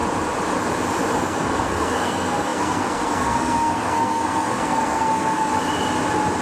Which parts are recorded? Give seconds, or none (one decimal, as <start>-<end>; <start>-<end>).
0.0-1.2; 5.5-6.4